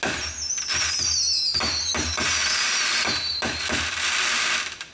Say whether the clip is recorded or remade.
recorded